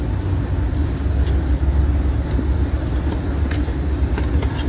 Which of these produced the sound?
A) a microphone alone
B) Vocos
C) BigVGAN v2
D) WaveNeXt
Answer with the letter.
A